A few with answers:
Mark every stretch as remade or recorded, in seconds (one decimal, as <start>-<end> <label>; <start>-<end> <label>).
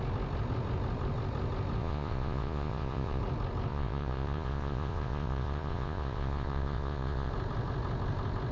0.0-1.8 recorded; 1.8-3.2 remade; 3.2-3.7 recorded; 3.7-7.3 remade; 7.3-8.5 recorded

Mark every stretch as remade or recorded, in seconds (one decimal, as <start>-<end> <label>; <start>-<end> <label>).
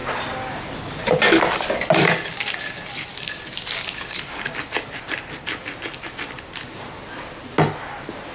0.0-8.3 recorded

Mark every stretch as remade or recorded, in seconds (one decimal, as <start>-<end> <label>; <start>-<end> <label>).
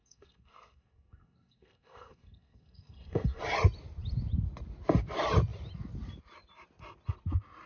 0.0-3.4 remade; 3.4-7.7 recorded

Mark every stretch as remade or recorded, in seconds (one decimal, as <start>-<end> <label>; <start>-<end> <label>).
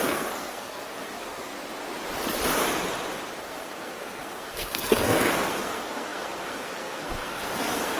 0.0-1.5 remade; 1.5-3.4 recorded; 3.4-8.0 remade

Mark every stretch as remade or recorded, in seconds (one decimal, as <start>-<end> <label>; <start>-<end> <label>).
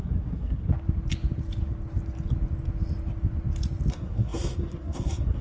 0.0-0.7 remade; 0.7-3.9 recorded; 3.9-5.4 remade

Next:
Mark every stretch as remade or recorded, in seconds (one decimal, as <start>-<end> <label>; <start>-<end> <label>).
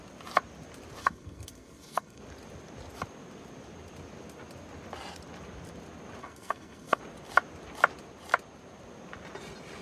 0.0-1.0 recorded; 1.0-2.2 remade; 2.2-6.2 recorded; 6.2-7.0 remade; 7.0-9.8 recorded